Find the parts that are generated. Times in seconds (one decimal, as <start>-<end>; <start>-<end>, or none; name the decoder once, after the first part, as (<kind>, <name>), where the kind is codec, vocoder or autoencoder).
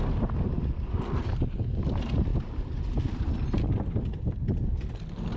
none